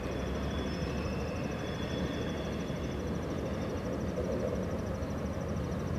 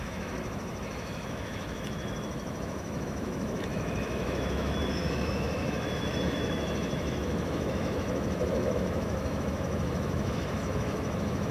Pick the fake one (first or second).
second